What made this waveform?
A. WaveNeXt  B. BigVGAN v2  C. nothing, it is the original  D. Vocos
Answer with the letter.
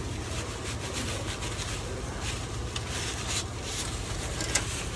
C